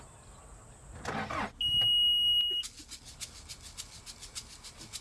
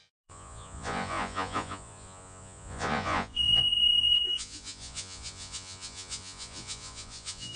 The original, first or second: first